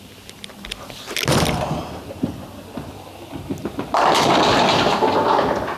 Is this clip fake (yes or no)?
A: no